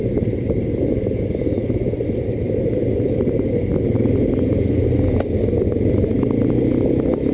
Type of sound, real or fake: real